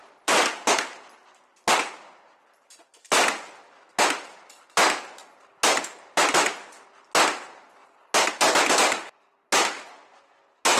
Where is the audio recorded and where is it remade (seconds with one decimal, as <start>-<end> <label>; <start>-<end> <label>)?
0.0-10.8 recorded

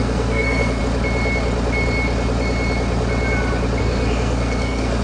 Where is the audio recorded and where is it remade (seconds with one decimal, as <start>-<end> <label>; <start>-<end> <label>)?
0.0-0.8 remade; 0.8-3.8 recorded; 3.8-5.0 remade